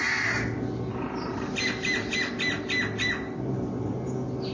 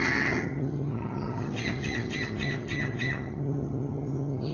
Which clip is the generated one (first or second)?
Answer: second